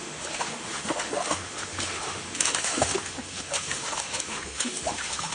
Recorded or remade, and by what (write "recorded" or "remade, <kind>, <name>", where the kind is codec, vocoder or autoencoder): remade, autoencoder, DAC-VAE